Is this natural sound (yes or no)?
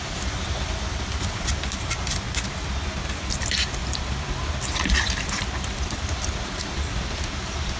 yes